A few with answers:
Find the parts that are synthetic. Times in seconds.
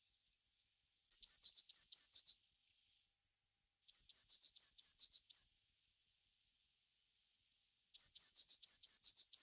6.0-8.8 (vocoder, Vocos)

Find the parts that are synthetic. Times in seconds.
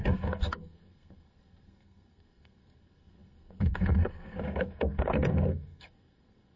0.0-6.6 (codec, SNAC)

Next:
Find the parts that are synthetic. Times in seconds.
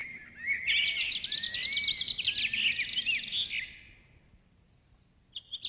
none